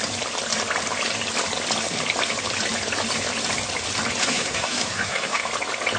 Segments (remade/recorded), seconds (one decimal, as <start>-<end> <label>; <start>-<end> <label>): 0.0-4.2 recorded; 4.2-5.4 remade; 5.4-6.0 recorded